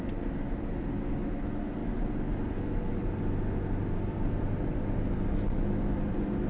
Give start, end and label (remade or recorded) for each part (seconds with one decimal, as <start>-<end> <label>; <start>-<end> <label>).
0.0-6.5 recorded